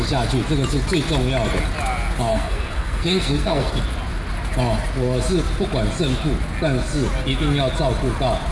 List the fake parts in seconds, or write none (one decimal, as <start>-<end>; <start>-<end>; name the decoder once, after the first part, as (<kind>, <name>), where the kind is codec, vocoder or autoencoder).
2.3-3.8 (codec, SNAC)